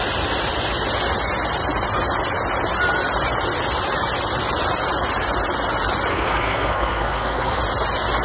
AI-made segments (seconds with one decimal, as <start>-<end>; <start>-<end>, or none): 6.1-7.6